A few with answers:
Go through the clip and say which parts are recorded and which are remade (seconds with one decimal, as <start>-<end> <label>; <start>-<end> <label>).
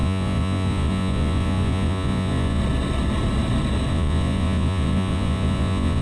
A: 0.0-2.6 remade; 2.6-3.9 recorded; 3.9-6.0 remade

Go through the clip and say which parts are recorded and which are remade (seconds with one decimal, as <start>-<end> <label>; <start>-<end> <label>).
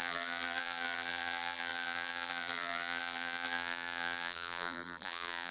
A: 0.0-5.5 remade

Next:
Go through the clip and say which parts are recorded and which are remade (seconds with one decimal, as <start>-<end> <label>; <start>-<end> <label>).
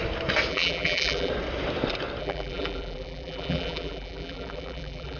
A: 0.0-0.5 recorded; 0.5-1.3 remade; 1.3-2.2 recorded; 2.2-5.2 remade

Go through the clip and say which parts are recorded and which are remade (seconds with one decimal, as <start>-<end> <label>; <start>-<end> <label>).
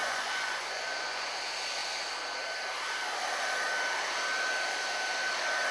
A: 0.0-1.3 remade; 1.3-5.7 recorded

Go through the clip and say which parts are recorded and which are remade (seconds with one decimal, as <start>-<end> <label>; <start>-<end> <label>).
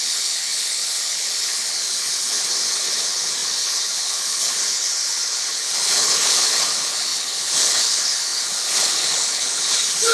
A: 0.0-10.1 remade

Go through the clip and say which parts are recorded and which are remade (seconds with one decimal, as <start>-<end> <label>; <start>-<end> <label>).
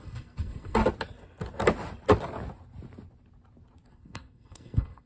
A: 0.0-0.8 remade; 0.8-3.9 recorded; 3.9-5.1 remade